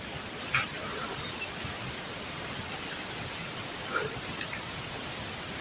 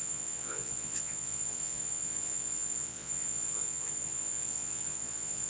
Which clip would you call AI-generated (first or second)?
second